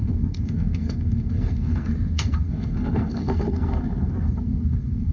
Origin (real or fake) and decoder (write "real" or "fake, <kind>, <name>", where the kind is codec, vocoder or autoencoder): fake, codec, SNAC